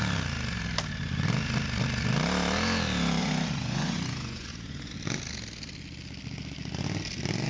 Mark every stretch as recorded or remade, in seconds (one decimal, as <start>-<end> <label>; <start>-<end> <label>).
0.0-3.2 recorded; 3.2-4.9 remade; 4.9-7.5 recorded